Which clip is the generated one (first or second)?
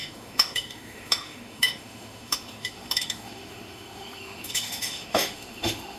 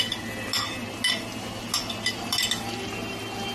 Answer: first